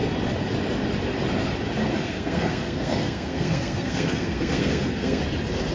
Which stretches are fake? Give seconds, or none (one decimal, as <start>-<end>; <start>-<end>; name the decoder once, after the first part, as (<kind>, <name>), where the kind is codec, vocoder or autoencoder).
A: 1.8-5.2 (codec, SNAC)